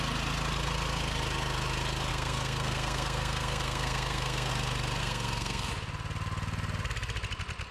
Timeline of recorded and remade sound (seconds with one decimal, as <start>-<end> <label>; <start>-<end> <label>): 0.0-2.1 recorded; 2.1-4.5 remade; 4.5-5.0 recorded; 5.0-5.7 remade; 5.7-7.7 recorded

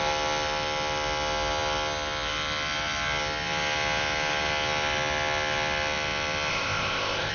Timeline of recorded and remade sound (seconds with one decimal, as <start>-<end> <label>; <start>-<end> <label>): 0.0-6.5 recorded; 6.5-7.3 remade

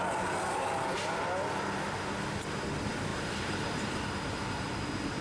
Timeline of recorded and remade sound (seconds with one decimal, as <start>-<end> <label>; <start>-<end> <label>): 0.0-3.1 recorded; 3.1-4.7 remade; 4.7-5.2 recorded